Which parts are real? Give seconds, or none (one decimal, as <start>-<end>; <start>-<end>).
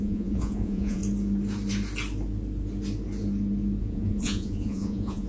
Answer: 1.0-3.8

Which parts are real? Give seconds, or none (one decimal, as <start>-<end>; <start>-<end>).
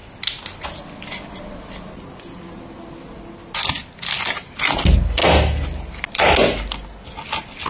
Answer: 0.0-7.7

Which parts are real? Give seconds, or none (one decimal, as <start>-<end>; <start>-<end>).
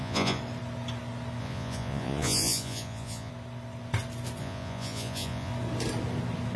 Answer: 0.4-1.4; 3.3-4.4; 5.5-6.6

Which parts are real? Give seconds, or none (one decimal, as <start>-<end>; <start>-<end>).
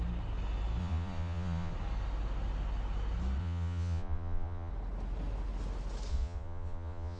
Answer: 0.0-0.8; 1.7-3.4; 4.7-6.1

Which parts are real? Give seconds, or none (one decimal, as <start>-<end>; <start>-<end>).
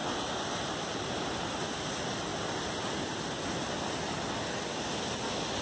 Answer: 0.0-5.6